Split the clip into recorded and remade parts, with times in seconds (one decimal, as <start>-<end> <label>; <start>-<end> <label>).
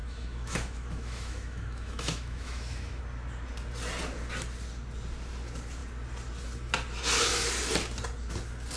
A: 0.0-3.0 remade; 3.0-8.8 recorded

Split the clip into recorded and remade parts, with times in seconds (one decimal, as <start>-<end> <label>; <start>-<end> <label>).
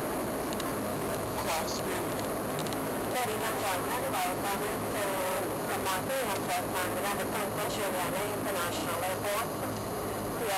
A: 0.0-0.9 recorded; 0.9-1.5 remade; 1.5-2.6 recorded; 2.6-5.2 remade; 5.2-10.6 recorded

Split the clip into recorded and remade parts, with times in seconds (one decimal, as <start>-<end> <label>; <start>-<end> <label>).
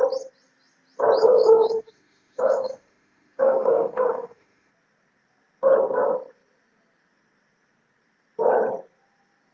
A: 0.0-1.2 recorded; 1.2-4.7 remade; 4.7-9.5 recorded